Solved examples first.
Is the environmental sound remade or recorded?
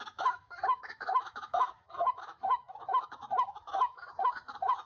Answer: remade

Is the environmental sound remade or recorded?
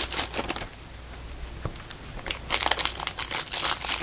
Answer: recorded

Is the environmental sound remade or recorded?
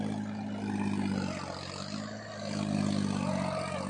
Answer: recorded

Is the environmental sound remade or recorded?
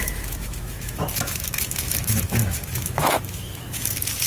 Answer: remade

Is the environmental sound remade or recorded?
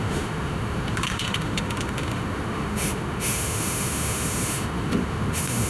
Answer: remade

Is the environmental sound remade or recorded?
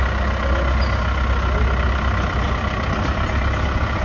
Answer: recorded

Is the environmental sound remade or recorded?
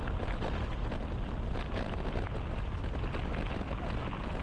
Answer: recorded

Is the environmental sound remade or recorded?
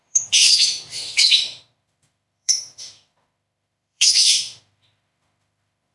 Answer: remade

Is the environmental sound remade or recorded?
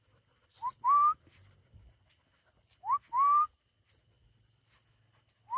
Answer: recorded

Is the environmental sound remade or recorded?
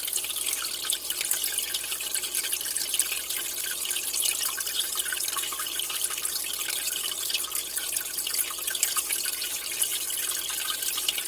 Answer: recorded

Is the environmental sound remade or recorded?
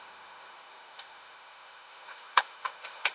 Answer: remade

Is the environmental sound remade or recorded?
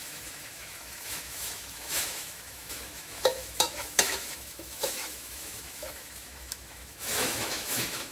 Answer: remade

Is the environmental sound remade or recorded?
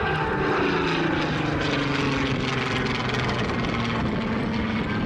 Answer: recorded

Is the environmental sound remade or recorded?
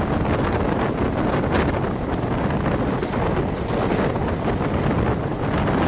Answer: recorded